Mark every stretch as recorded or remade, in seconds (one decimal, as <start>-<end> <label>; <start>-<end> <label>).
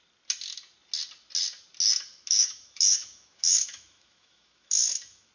0.0-2.1 recorded; 2.1-5.3 remade